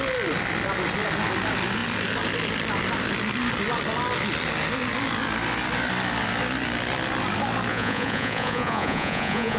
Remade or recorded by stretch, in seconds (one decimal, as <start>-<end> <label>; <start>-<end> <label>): 0.0-7.7 recorded; 7.7-9.6 remade